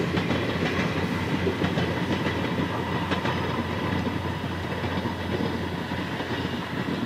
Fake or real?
real